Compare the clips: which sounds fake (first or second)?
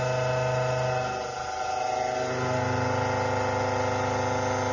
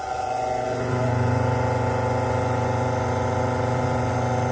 second